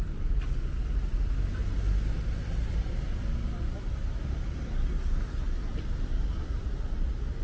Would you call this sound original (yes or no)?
yes